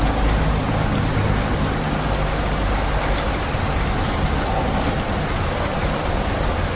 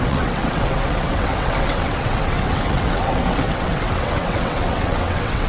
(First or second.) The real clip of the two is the first